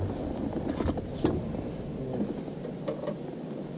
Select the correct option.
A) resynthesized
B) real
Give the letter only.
B